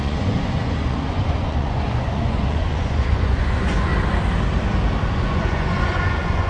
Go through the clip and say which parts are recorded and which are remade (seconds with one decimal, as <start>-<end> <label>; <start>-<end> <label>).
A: 0.0-3.9 remade; 3.9-5.1 recorded; 5.1-6.5 remade